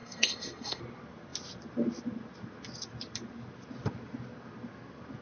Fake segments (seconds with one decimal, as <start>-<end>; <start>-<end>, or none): 0.0-0.8

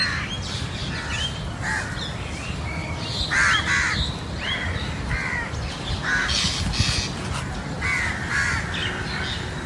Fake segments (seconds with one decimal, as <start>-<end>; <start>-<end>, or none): 0.8-1.4; 2.8-5.9